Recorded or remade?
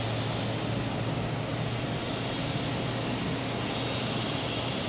recorded